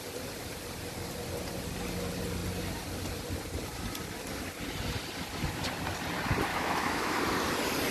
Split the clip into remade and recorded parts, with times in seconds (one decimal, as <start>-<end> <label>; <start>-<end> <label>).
0.0-6.5 recorded; 6.5-7.2 remade; 7.2-7.9 recorded